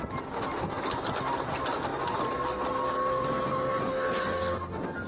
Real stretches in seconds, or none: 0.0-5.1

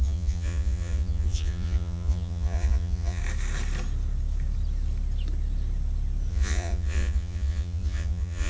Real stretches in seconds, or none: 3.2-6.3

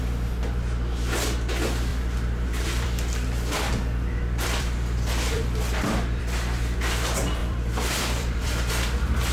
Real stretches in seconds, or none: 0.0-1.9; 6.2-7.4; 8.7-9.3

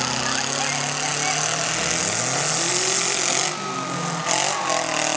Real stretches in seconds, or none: 0.0-5.2